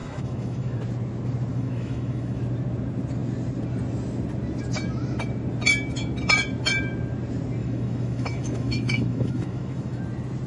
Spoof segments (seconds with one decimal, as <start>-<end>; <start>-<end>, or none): 0.0-0.8; 1.5-2.4; 7.6-10.0